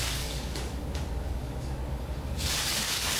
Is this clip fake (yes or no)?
yes